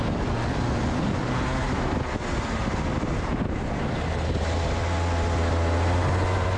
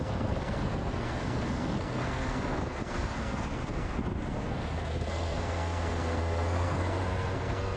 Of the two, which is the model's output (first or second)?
second